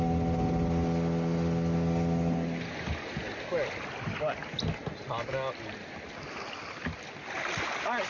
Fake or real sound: real